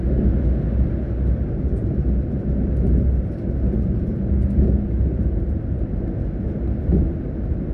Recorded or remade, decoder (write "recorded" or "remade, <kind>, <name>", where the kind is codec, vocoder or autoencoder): recorded